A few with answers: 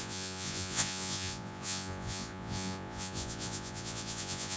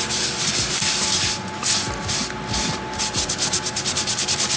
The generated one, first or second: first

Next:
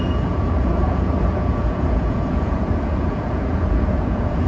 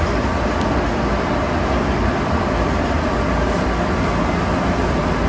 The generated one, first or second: first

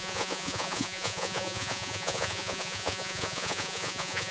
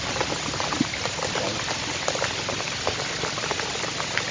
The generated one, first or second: first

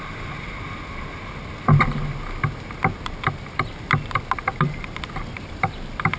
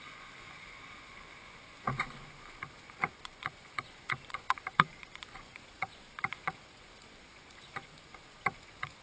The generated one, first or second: second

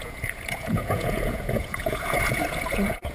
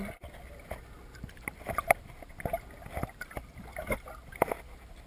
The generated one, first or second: first